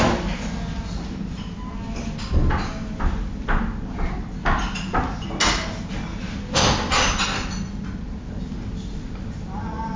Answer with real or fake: real